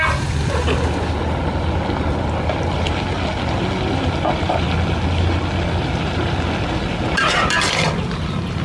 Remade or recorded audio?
recorded